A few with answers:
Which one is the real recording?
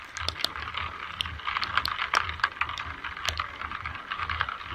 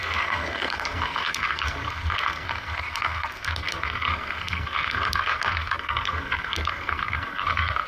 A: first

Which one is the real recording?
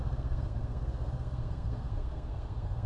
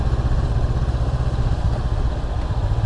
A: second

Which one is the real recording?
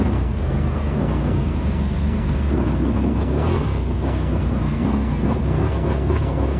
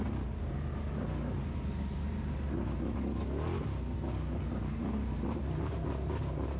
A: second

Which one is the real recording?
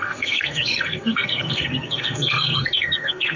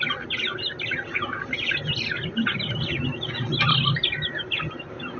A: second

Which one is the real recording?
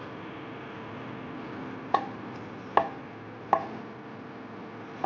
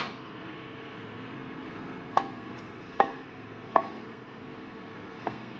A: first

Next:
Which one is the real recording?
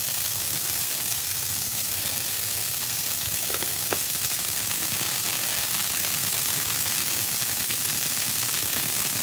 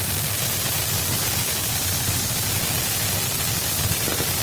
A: second